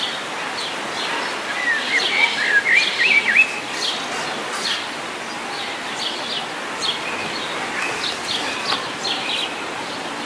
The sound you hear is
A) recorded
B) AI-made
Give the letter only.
A